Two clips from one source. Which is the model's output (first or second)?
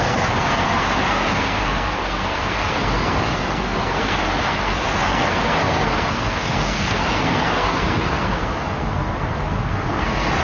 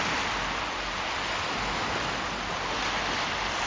first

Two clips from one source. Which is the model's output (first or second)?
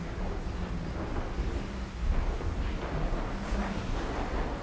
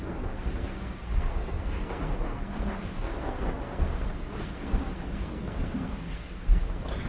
second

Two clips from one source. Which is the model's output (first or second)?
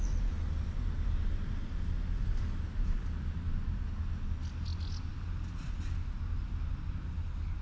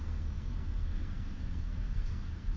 second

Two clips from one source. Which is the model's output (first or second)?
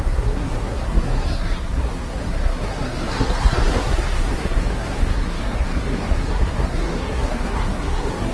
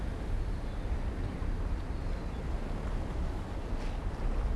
first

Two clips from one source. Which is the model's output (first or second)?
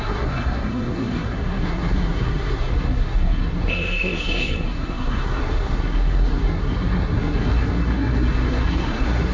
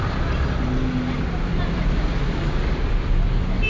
first